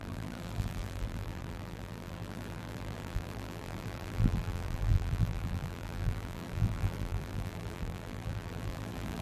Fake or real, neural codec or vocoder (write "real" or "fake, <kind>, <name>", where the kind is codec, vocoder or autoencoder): fake, vocoder, BigVGAN v2